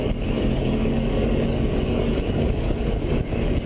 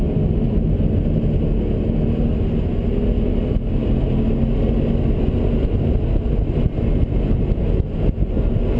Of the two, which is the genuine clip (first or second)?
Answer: second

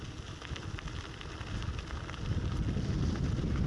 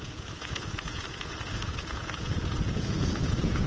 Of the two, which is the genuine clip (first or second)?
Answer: first